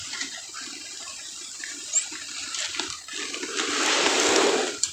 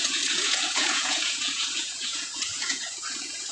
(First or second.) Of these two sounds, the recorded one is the first